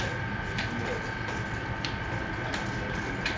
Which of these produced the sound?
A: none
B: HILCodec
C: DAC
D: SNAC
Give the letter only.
A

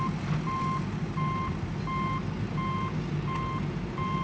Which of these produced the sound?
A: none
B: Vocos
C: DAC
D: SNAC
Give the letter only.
A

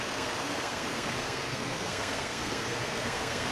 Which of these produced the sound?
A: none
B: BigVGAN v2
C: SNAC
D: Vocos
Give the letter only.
C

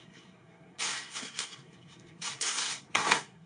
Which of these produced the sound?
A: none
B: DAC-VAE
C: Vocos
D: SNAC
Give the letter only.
D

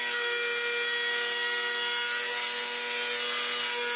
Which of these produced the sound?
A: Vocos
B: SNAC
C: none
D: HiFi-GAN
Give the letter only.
C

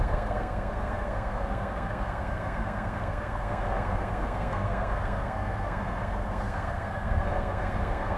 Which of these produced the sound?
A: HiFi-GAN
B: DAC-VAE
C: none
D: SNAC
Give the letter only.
D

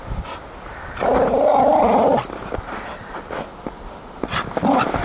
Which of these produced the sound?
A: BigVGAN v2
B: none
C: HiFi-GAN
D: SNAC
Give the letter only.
B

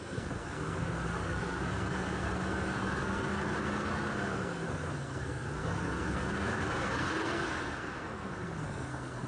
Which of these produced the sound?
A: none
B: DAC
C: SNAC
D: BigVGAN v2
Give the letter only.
C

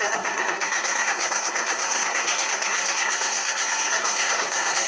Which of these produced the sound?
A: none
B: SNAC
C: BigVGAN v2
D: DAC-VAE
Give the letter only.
B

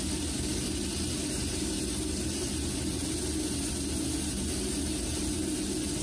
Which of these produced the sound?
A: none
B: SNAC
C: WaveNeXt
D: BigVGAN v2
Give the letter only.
A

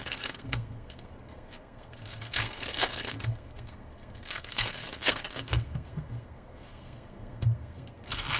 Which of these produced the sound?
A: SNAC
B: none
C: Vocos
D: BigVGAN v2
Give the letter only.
A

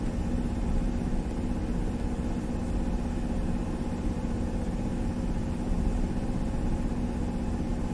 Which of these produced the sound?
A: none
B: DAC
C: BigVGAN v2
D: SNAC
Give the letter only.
A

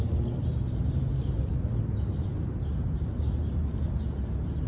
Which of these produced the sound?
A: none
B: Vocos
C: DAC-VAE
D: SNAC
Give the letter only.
A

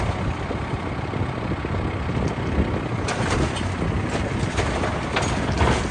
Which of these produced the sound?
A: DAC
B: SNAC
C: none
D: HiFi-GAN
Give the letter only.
C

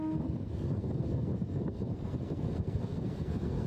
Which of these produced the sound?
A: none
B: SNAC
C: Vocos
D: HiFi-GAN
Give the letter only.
B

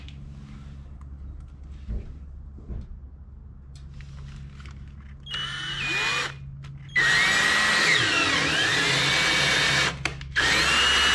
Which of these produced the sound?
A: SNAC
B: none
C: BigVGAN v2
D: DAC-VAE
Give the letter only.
B